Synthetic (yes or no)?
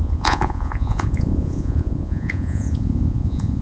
yes